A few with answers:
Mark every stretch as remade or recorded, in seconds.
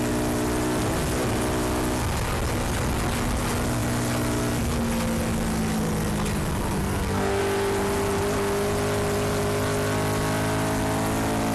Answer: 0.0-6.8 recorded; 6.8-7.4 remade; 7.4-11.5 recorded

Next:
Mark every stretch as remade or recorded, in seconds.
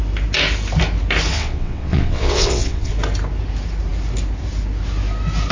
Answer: 0.0-1.3 recorded; 1.3-2.9 remade; 2.9-5.5 recorded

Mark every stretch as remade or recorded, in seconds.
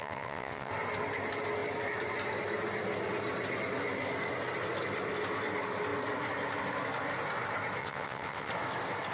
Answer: 0.0-0.7 remade; 0.7-7.8 recorded; 7.8-8.5 remade; 8.5-9.1 recorded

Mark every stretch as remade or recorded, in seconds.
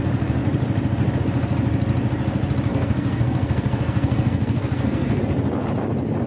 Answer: 0.0-2.7 recorded; 2.7-5.2 remade; 5.2-6.3 recorded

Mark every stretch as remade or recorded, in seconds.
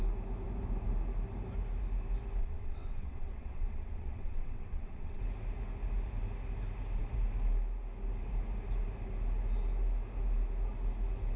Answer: 0.0-2.4 recorded; 2.4-5.2 remade; 5.2-11.4 recorded